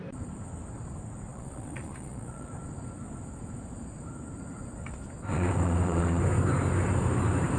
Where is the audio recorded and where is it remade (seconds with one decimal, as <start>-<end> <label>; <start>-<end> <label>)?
0.0-1.3 recorded; 1.3-2.5 remade; 2.5-5.3 recorded; 5.3-6.2 remade; 6.2-7.6 recorded